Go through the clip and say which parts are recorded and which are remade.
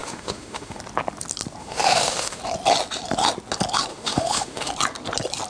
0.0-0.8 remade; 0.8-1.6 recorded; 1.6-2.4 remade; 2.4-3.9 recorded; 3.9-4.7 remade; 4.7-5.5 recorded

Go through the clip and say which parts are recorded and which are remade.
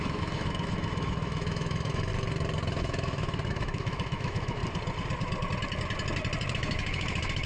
0.0-2.1 remade; 2.1-2.8 recorded; 2.8-4.6 remade; 4.6-6.5 recorded; 6.5-7.5 remade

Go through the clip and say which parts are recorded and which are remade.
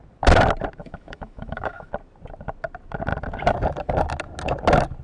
0.0-0.8 recorded; 0.8-1.9 remade; 1.9-5.0 recorded